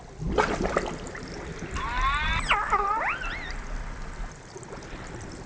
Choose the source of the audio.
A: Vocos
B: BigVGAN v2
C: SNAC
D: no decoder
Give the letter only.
D